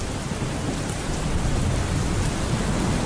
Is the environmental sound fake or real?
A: real